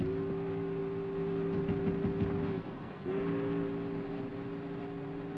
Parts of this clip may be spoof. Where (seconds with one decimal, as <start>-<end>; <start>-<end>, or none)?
2.4-3.2